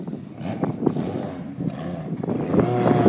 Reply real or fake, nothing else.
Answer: real